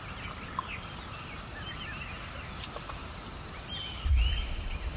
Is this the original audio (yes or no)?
yes